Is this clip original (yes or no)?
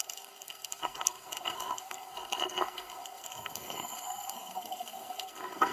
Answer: no